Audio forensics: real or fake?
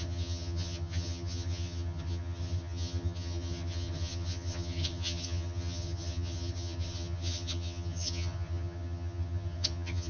fake